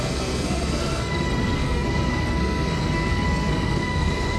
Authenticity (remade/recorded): remade